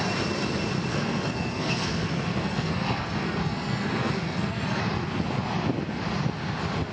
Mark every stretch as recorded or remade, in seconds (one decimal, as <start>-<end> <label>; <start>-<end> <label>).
0.0-0.9 recorded; 0.9-4.8 remade; 4.8-6.9 recorded